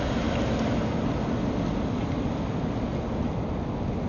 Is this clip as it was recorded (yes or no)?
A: yes